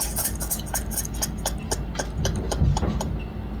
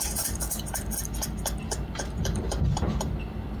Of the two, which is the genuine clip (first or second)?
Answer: first